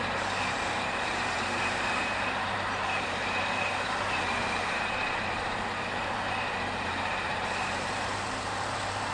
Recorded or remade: remade